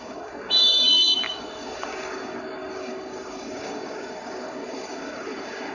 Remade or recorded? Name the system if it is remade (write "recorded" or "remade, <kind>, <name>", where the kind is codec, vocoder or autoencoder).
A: remade, codec, DAC